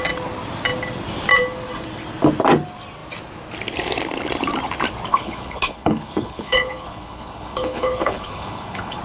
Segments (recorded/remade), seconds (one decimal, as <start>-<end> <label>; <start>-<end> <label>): 0.0-5.1 recorded; 5.1-9.0 remade